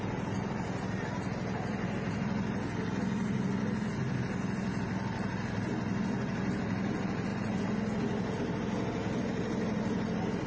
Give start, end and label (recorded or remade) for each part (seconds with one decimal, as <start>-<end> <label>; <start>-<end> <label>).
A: 0.0-10.5 recorded